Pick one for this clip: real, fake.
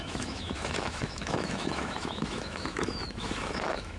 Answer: fake